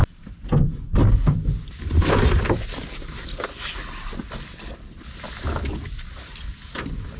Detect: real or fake real